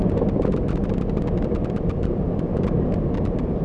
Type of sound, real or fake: real